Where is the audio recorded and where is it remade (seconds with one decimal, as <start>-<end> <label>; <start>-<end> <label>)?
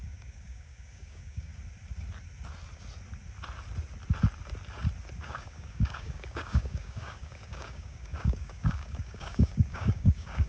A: 0.0-1.5 remade; 1.5-5.2 recorded; 5.2-10.5 remade